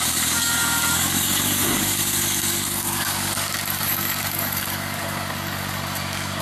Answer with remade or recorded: remade